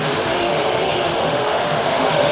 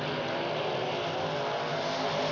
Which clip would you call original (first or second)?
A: second